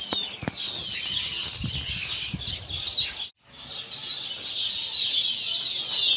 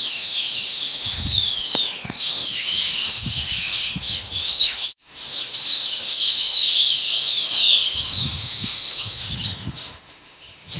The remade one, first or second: second